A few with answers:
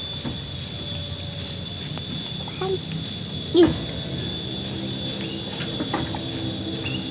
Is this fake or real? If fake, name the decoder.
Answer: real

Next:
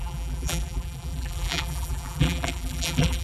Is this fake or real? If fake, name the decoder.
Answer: fake, vocoder, BigVGAN v2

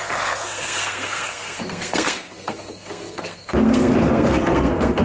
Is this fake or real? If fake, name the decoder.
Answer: fake, codec, SNAC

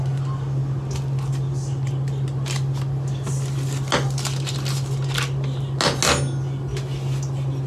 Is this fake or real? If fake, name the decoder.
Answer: real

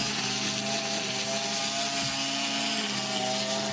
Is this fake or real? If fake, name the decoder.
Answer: real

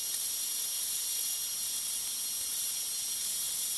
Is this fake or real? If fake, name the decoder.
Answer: real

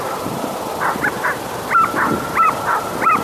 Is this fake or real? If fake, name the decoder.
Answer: fake, vocoder, BigVGAN v2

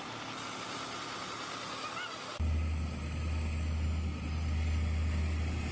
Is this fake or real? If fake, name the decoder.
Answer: real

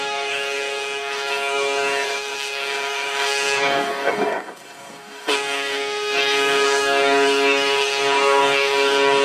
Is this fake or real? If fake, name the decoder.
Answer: fake, codec, DAC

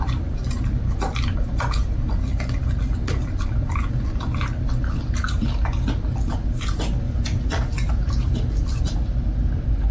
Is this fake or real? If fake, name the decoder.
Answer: real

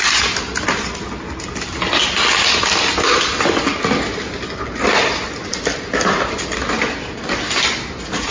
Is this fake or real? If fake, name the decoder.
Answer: real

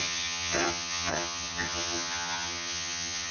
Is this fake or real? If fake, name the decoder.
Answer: fake, vocoder, HiFi-GAN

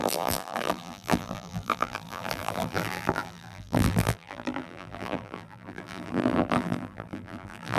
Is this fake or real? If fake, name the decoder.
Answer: fake, vocoder, BigVGAN v2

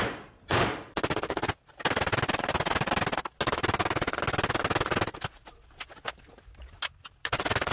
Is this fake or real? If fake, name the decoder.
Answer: real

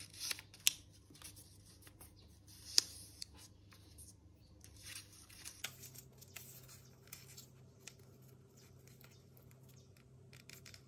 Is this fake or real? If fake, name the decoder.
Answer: real